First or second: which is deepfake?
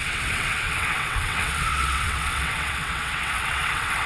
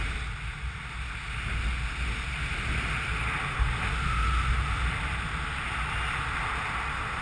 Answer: first